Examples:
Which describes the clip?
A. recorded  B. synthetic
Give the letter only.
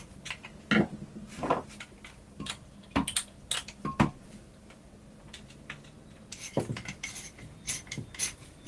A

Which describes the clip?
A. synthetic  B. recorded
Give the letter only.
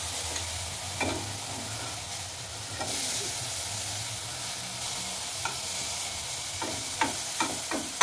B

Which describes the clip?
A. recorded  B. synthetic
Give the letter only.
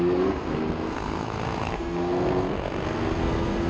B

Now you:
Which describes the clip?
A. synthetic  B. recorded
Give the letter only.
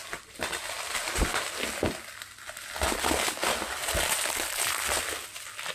B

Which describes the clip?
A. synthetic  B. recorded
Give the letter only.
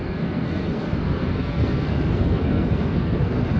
A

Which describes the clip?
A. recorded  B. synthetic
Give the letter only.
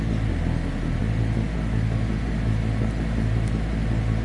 A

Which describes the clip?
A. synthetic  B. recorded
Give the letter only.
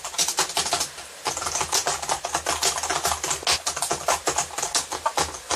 B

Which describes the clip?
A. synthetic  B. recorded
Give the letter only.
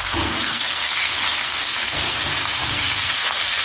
A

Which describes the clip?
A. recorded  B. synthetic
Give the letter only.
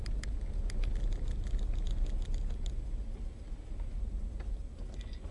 A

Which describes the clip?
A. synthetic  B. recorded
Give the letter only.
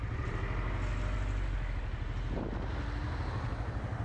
B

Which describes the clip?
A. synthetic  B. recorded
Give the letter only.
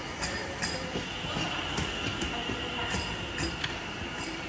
B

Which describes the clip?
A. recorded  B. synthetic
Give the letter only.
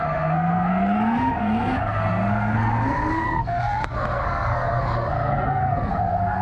B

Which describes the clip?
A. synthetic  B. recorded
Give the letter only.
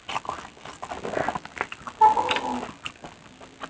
B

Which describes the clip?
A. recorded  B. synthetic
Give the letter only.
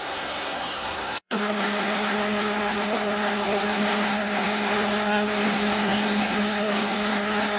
B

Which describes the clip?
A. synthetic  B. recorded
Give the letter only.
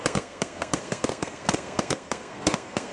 A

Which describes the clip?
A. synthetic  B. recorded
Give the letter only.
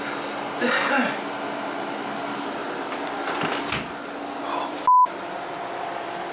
B